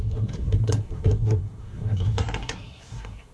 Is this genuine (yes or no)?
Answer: no